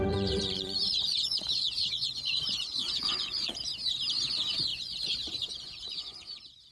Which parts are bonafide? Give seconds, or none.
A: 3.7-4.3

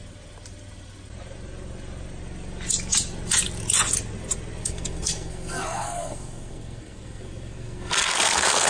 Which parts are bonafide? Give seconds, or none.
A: 0.0-4.6